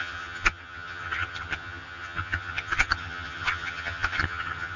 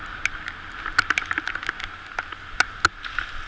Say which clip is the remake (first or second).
first